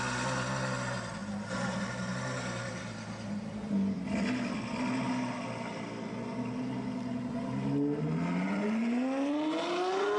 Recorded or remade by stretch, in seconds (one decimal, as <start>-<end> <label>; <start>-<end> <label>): 0.0-10.2 recorded